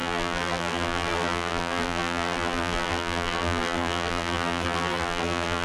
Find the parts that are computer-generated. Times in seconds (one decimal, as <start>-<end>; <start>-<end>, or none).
0.0-5.6

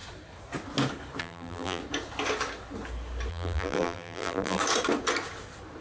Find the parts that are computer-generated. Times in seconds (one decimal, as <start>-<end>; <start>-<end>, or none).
1.2-1.8; 3.3-4.6

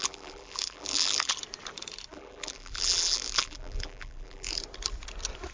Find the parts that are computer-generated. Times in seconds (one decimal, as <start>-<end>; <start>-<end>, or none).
0.0-1.3; 2.1-4.6

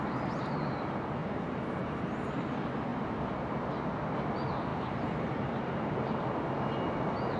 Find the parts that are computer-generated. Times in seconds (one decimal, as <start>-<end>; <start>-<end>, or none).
1.2-2.1; 2.9-3.5; 4.7-6.2

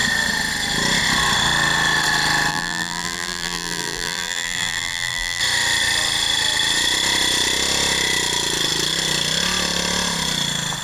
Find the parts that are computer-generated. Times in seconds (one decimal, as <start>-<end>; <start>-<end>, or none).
2.5-5.4